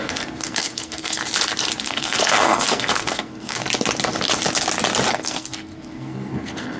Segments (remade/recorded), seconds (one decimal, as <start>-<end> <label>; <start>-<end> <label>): 0.0-1.2 remade; 1.2-1.8 recorded; 1.8-3.6 remade; 3.6-5.1 recorded; 5.1-6.8 remade